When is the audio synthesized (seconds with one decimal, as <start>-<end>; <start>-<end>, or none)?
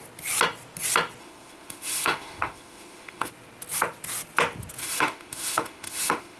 1.2-3.3; 4.8-6.4